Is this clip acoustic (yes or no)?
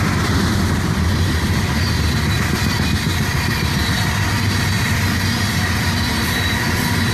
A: yes